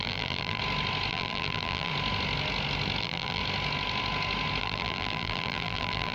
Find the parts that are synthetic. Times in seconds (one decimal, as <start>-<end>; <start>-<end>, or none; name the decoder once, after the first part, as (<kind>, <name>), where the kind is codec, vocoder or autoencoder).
0.0-0.6 (vocoder, BigVGAN v2); 1.1-1.9; 3.0-3.4; 4.6-6.1